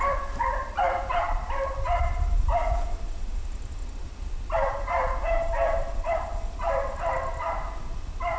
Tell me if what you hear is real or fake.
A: real